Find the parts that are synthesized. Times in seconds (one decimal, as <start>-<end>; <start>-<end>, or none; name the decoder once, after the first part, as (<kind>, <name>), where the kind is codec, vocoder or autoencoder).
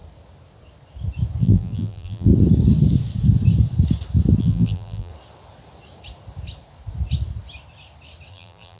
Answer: 1.4-2.3 (vocoder, BigVGAN v2); 4.4-5.1; 8.3-8.8